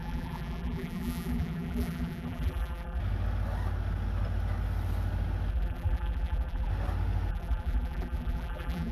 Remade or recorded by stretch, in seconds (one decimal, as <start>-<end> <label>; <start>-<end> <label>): 0.0-3.0 remade; 3.0-5.5 recorded; 5.5-6.7 remade; 6.7-7.3 recorded; 7.3-8.9 remade